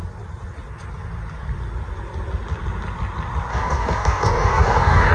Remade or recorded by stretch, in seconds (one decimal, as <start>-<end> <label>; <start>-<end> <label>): 0.0-3.5 recorded; 3.5-5.1 remade

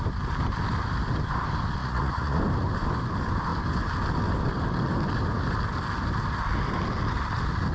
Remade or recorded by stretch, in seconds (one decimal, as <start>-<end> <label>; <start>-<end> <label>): 0.0-1.8 recorded; 1.8-2.4 remade; 2.4-7.7 recorded

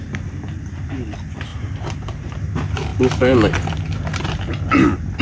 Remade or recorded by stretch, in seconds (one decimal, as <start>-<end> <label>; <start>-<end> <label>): 0.0-1.5 recorded; 1.5-2.4 remade; 2.4-5.2 recorded

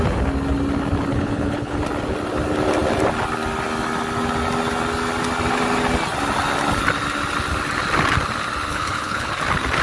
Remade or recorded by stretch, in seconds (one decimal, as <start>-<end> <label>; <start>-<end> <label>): 0.0-1.1 recorded; 1.1-1.8 remade; 1.8-8.7 recorded; 8.7-9.3 remade; 9.3-9.8 recorded

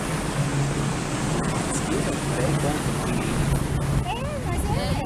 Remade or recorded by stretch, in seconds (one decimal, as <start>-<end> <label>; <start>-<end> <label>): 0.0-0.5 recorded; 0.5-3.6 remade; 3.6-5.1 recorded

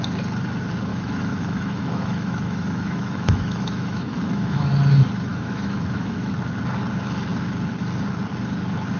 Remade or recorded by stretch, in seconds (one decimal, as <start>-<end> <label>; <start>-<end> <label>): 0.0-0.9 recorded; 0.9-4.7 remade; 4.7-5.3 recorded; 5.3-6.3 remade; 6.3-9.0 recorded

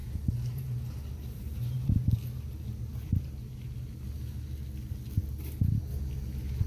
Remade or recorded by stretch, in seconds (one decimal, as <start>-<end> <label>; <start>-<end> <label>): 0.0-4.0 remade; 4.0-6.7 recorded